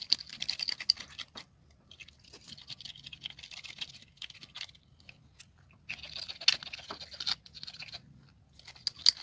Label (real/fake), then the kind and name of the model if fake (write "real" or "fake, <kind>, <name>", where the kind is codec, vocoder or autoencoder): real